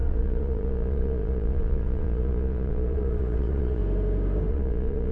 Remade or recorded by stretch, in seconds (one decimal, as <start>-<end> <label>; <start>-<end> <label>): 0.0-3.8 remade; 3.8-4.5 recorded; 4.5-5.1 remade